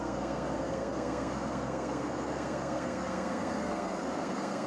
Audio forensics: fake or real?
fake